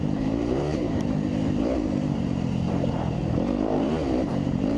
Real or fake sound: fake